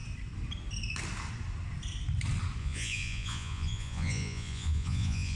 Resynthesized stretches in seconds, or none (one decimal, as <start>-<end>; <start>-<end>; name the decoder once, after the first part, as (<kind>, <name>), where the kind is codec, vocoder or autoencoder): 2.6-5.4 (vocoder, Vocos)